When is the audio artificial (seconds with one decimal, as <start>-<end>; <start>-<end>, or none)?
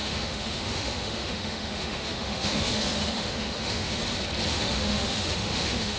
0.0-4.0; 4.5-6.0